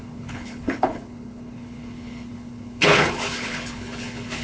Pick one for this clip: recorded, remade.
remade